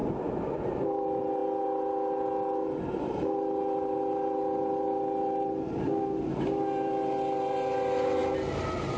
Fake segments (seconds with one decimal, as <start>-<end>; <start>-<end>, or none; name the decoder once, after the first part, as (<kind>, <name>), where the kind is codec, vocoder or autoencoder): 0.6-8.2 (vocoder, BigVGAN v2)

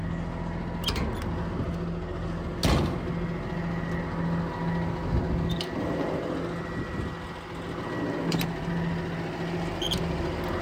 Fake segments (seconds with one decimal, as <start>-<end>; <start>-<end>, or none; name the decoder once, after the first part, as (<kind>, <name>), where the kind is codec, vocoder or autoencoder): none

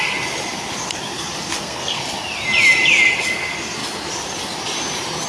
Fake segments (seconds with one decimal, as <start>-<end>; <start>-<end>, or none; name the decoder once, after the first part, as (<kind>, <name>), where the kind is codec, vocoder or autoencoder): 1.4-2.0 (codec, SNAC)

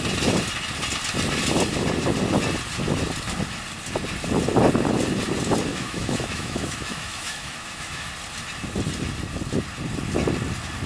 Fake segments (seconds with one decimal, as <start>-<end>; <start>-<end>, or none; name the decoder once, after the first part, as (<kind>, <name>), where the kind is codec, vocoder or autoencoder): 5.7-8.1 (autoencoder, DAC-VAE)

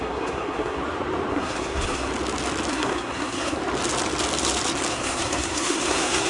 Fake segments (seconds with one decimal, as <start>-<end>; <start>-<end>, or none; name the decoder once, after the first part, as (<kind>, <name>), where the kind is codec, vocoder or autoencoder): 0.0-0.8 (codec, SNAC); 1.3-2.1; 2.7-3.6; 4.9-6.3

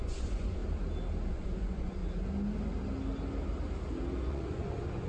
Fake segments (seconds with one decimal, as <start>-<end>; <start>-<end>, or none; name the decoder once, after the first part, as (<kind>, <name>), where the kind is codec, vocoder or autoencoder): 0.0-0.6 (vocoder, Vocos); 1.3-2.0; 4.3-5.1

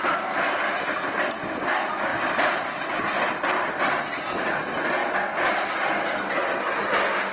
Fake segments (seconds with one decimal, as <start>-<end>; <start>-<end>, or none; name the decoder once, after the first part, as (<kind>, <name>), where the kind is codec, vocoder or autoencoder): none